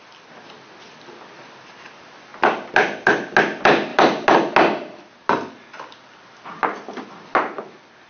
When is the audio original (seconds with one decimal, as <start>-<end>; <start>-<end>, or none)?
0.0-8.1